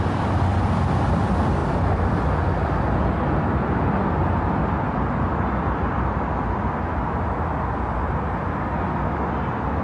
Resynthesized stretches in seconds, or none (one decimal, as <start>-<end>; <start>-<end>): none